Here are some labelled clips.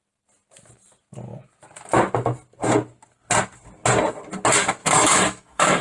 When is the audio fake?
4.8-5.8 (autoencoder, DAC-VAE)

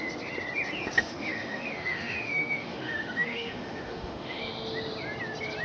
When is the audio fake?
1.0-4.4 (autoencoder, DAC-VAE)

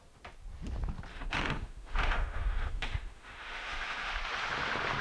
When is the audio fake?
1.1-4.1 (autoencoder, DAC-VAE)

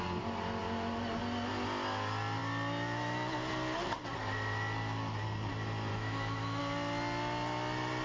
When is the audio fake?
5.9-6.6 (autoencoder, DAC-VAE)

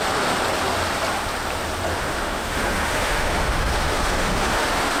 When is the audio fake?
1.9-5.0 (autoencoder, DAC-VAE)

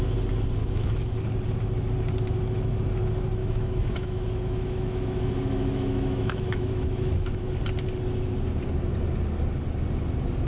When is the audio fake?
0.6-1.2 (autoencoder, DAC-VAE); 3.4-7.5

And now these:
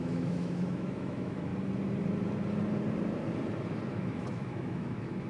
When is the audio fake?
0.0-1.5 (autoencoder, DAC-VAE); 3.9-5.3

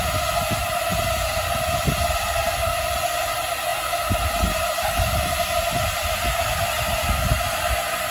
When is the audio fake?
none